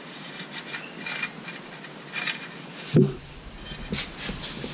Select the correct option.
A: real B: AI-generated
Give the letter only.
A